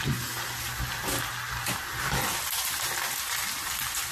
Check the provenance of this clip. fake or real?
real